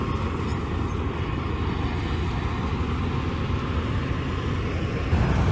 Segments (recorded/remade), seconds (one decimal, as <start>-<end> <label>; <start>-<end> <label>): 0.0-5.5 recorded